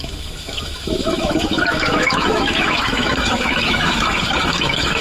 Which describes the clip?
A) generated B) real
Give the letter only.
A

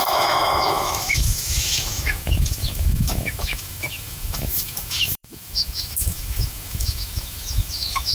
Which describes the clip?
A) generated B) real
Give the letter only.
A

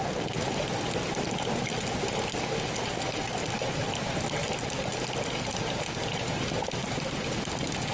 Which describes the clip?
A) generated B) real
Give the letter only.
B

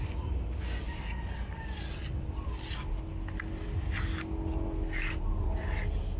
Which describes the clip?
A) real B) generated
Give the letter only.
A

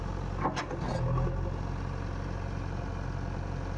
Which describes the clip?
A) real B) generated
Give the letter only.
A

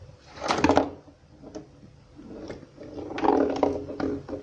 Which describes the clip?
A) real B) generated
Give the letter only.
A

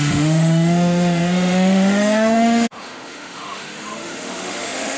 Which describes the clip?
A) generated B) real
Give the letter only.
A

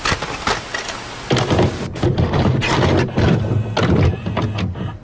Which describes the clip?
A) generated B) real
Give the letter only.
B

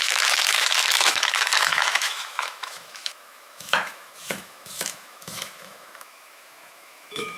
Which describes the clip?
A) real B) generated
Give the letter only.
B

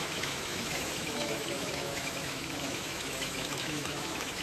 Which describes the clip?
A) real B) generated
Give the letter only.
B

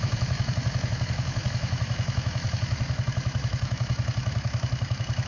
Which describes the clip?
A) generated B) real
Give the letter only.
A